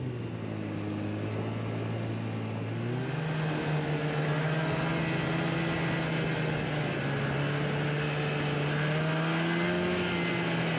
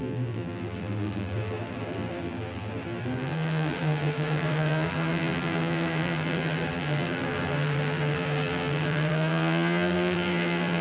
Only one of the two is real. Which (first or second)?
first